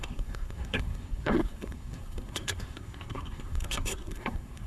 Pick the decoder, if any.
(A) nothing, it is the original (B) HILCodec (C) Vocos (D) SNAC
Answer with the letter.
D